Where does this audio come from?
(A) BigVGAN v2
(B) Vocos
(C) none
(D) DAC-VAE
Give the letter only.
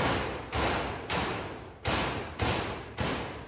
C